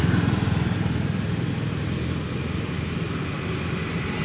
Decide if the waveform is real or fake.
real